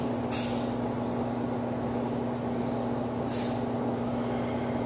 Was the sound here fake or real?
real